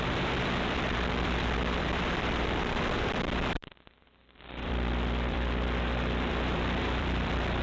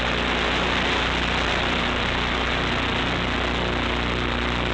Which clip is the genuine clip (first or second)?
second